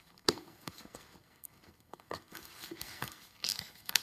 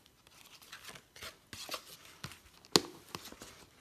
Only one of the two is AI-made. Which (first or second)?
first